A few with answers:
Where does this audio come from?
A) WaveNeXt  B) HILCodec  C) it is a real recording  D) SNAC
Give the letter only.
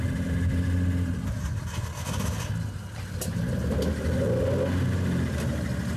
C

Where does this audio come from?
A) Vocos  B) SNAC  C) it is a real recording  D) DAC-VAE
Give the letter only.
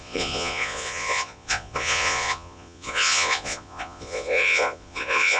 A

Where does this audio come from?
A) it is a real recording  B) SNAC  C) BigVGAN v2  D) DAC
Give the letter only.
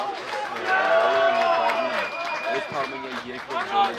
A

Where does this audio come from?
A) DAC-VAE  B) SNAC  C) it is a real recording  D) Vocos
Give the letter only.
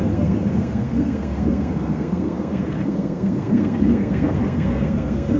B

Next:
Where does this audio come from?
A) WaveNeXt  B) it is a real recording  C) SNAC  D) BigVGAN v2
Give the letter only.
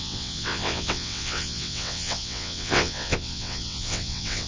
A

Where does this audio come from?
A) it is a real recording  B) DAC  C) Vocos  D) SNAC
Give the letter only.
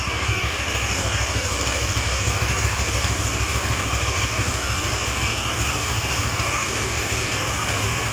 B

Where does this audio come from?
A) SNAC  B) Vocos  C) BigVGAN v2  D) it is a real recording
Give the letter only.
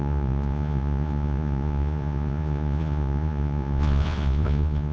B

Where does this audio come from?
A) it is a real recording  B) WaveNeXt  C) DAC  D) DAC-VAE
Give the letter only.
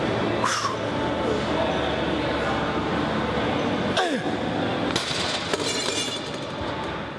A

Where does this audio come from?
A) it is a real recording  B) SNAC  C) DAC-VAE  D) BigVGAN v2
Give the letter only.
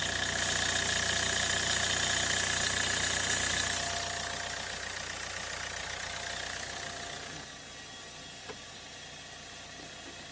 A